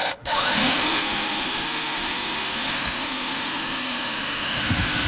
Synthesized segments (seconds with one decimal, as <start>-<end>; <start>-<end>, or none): 0.0-5.1